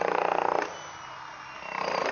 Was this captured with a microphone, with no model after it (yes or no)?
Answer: yes